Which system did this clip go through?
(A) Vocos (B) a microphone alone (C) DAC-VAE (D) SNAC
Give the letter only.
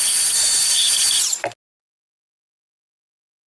B